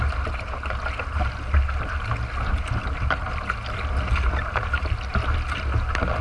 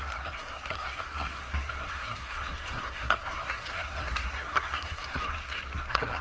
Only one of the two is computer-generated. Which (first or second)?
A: second